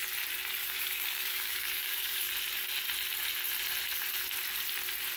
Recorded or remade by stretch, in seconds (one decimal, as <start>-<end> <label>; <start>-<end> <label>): 0.0-0.6 recorded; 0.6-2.3 remade; 2.3-5.2 recorded